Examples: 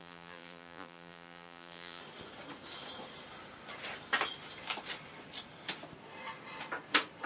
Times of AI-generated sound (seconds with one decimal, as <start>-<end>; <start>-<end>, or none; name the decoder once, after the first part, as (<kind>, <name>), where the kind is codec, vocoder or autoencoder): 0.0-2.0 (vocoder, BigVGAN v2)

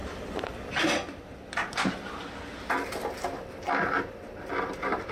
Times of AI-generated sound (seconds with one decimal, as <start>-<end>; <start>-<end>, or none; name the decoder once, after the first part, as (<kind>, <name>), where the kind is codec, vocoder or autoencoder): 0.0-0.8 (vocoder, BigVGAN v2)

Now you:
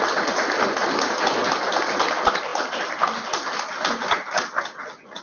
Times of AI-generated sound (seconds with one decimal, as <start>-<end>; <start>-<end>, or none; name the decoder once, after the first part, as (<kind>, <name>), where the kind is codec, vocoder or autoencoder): none

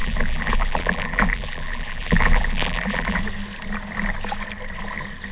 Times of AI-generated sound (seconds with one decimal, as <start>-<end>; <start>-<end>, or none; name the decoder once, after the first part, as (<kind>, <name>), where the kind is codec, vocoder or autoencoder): 0.0-3.2 (vocoder, BigVGAN v2)